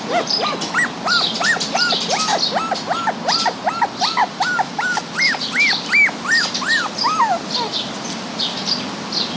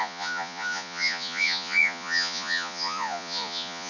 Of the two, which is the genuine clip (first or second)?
first